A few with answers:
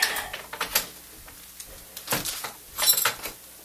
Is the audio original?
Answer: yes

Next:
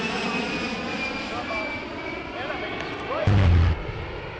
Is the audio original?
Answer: yes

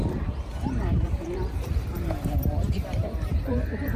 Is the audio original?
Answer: no